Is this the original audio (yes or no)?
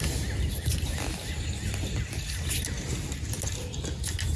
yes